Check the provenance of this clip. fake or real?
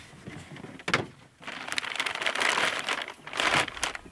real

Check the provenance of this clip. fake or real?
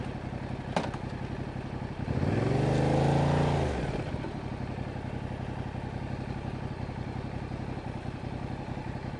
real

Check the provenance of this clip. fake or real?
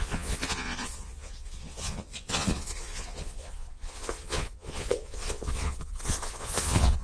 fake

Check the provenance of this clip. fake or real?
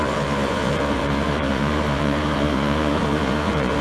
fake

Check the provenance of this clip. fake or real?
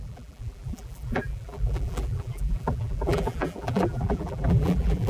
fake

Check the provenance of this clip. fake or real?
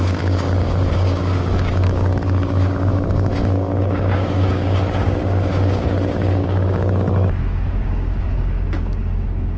fake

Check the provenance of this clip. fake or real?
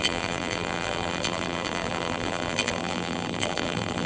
fake